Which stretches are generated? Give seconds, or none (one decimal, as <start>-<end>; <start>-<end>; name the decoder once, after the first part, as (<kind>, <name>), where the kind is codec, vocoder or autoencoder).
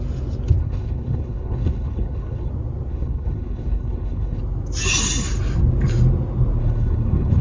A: 0.6-2.5 (codec, HILCodec); 2.9-4.4; 6.6-7.4